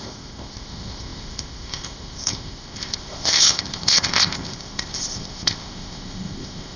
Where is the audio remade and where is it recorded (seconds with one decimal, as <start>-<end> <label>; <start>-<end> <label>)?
0.0-6.8 remade